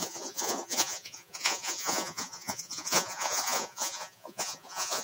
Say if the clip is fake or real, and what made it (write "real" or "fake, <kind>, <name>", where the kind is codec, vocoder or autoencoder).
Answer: fake, vocoder, Vocos